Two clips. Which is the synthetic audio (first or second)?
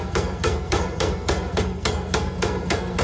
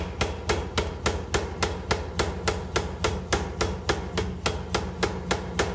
first